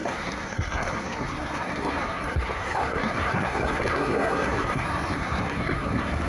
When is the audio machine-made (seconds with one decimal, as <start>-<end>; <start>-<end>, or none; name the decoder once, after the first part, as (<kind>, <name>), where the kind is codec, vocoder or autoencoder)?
0.0-6.3 (codec, SNAC)